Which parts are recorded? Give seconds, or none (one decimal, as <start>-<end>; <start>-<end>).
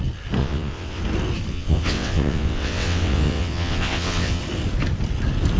0.0-0.4; 1.0-1.5; 4.4-5.6